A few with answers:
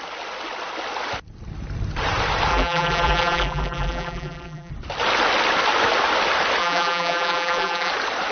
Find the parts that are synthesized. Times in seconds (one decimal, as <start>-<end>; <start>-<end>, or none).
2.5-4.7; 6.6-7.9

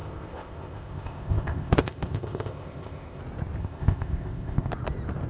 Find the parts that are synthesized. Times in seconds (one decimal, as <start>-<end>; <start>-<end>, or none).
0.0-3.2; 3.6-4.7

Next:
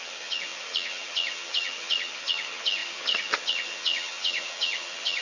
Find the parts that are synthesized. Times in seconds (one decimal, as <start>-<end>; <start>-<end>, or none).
0.0-5.2

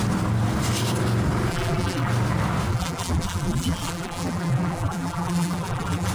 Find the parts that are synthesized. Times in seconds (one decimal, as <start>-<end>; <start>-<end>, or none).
1.5-2.1; 2.7-6.1

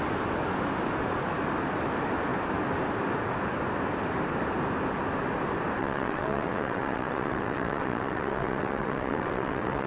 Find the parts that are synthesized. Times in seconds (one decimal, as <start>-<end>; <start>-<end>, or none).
5.8-9.9